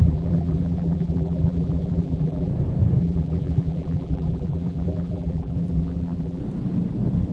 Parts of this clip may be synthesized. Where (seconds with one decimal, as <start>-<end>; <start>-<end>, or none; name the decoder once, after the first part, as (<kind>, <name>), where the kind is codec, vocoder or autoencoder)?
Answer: 0.0-2.5 (vocoder, BigVGAN v2); 3.0-6.4